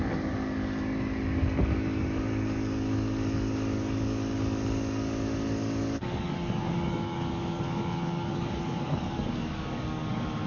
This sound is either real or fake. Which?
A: fake